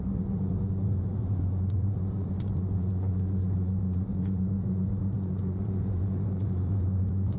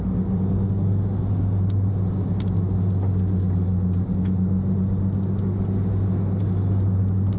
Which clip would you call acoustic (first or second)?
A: second